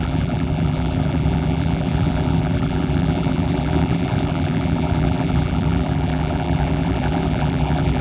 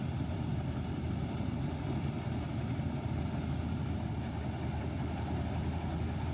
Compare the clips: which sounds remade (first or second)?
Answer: first